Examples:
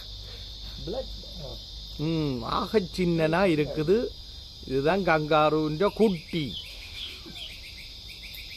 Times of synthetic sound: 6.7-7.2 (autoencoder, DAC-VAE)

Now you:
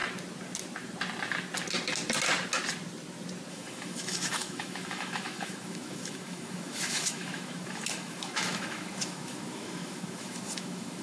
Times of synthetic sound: 3.5-11.0 (autoencoder, DAC-VAE)

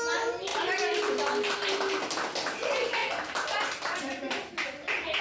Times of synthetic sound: none

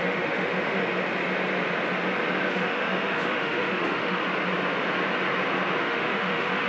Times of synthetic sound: 0.0-0.8 (autoencoder, DAC-VAE); 2.5-4.2; 5.8-6.7